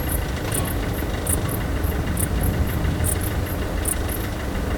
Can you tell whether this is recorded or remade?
recorded